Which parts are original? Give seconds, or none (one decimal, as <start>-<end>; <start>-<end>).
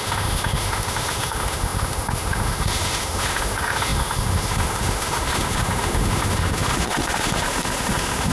none